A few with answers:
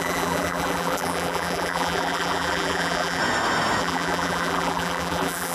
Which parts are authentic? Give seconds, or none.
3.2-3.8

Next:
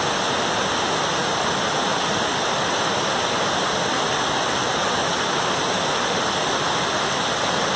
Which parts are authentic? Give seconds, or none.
0.0-7.8

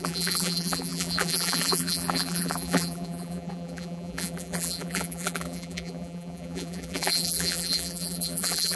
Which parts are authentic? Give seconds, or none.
none

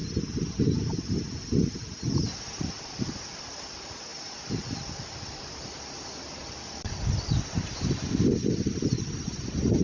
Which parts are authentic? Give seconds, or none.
0.0-2.6; 4.1-4.9